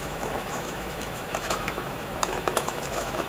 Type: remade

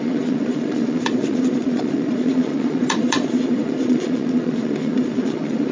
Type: remade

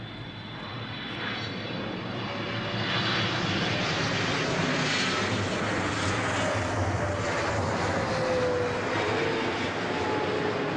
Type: recorded